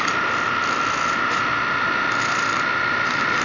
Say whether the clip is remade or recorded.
recorded